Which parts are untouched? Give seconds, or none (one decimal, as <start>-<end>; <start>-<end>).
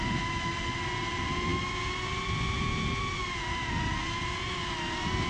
0.0-5.3